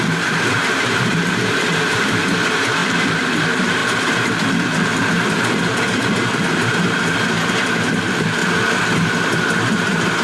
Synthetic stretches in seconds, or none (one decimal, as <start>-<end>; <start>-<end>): 0.0-8.4; 9.6-10.2